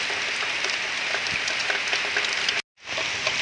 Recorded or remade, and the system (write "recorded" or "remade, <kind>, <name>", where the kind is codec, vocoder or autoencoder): recorded